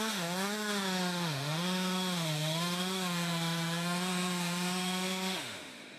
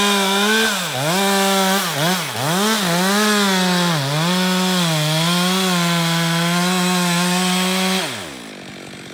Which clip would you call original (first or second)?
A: second